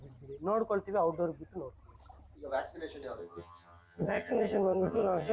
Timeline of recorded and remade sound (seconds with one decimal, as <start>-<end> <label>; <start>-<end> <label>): 0.0-3.2 recorded; 3.2-5.3 remade